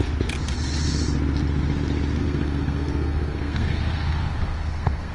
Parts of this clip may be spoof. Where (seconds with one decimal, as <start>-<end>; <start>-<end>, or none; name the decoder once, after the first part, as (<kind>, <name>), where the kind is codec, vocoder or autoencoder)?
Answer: 2.2-5.1 (codec, SNAC)